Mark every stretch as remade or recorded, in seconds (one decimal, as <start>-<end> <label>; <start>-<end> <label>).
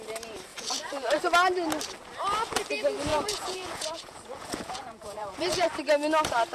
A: 0.0-0.5 recorded; 0.5-1.2 remade; 1.2-3.1 recorded; 3.1-5.8 remade; 5.8-6.5 recorded